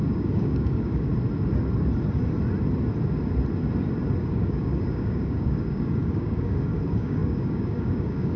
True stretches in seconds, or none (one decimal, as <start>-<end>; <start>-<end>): 1.1-4.2